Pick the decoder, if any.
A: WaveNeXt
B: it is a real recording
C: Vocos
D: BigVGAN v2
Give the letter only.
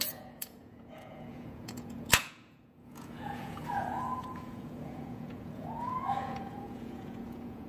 C